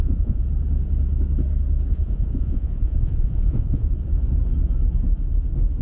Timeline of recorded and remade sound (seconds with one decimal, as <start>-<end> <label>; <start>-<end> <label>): 0.0-0.4 remade; 0.4-1.9 recorded; 1.9-3.9 remade; 3.9-5.8 recorded